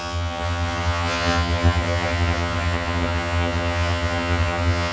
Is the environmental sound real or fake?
fake